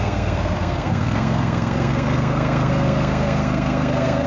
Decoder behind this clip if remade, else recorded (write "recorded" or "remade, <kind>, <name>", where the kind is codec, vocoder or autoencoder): remade, codec, SNAC